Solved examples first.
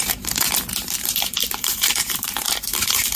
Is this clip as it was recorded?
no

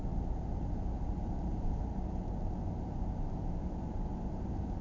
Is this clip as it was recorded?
yes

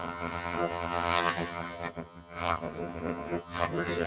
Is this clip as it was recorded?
no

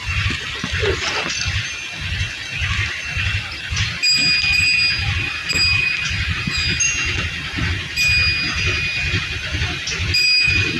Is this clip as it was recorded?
yes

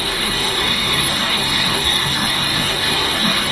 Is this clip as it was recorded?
no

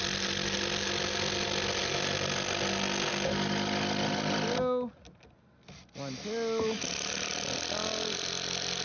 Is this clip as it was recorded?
yes